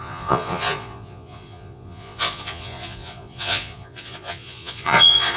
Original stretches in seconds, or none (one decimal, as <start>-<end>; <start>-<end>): none